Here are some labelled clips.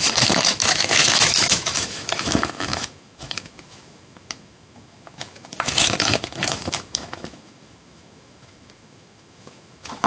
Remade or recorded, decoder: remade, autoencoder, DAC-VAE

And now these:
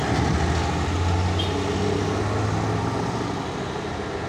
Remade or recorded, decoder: recorded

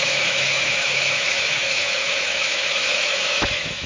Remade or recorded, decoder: remade, autoencoder, DAC-VAE